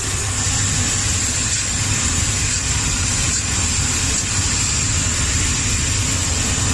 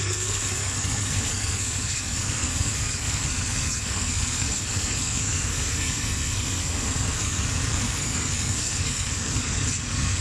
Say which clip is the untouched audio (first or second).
first